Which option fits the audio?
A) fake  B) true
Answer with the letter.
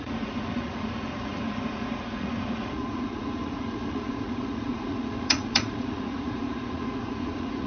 A